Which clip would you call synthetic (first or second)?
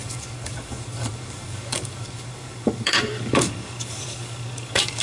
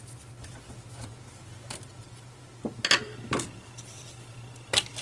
first